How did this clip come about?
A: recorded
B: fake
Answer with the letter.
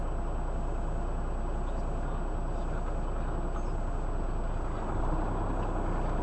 A